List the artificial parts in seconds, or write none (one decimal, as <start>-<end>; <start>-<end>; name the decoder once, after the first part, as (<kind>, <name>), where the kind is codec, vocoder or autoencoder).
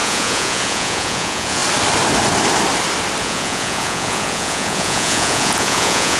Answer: 0.0-1.6 (vocoder, Vocos); 3.2-6.2